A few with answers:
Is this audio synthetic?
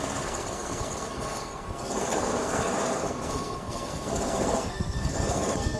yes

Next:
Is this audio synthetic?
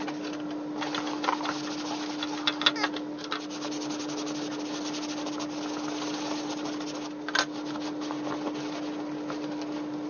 no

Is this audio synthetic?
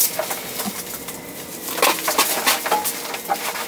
no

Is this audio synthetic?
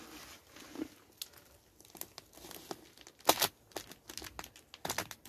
no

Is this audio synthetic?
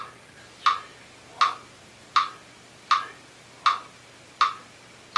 no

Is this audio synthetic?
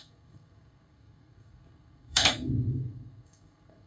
yes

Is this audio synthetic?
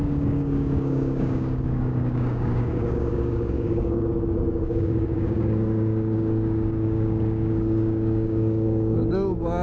yes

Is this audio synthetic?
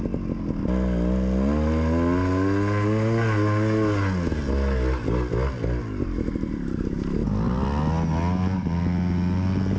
no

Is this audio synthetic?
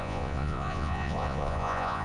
yes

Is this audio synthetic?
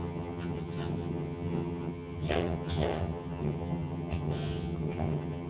yes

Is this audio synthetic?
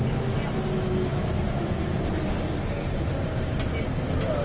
no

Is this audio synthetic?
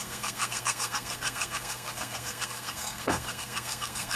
yes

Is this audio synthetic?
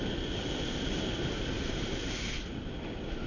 no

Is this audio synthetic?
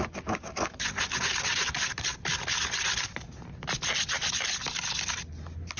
no